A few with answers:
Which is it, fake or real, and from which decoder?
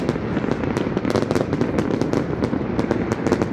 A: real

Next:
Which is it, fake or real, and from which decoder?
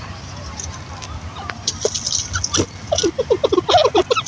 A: real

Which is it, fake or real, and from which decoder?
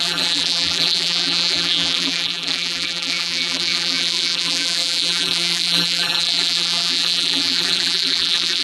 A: fake, vocoder, BigVGAN v2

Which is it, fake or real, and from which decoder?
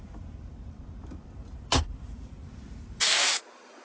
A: fake, vocoder, BigVGAN v2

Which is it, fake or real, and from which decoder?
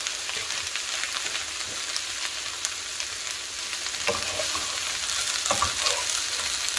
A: real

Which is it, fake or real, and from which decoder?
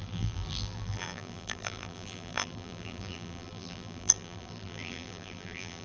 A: fake, vocoder, BigVGAN v2